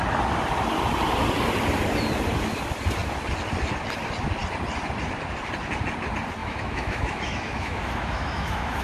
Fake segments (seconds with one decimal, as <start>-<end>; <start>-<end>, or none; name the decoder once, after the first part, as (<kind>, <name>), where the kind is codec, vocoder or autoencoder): 6.4-8.8 (autoencoder, DAC-VAE)